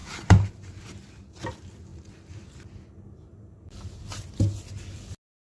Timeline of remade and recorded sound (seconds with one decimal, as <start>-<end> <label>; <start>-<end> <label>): 0.0-0.8 remade; 0.8-5.4 recorded